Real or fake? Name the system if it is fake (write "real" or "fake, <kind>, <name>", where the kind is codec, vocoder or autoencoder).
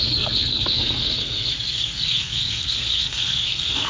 fake, codec, SNAC